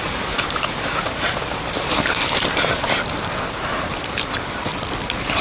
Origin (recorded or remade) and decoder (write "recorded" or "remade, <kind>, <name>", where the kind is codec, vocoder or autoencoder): remade, vocoder, BigVGAN v2